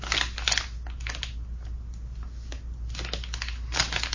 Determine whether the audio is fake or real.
real